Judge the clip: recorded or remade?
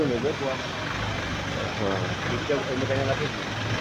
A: recorded